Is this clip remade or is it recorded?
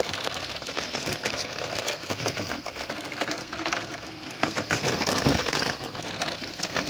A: remade